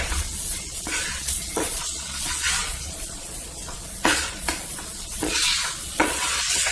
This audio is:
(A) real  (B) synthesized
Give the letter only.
B